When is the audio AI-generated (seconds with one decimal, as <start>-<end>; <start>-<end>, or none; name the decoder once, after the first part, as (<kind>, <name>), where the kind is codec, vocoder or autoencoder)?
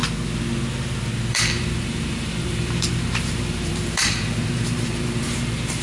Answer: 1.3-5.8 (vocoder, BigVGAN v2)